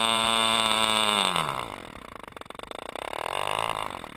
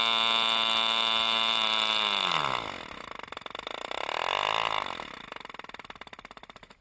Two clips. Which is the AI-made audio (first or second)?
first